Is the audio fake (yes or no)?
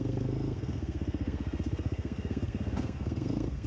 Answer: yes